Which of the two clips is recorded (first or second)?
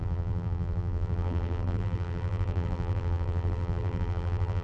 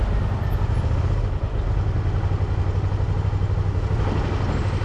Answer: second